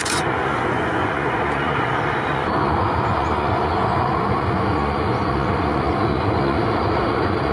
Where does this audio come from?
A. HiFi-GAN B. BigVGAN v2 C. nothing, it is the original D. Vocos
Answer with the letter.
D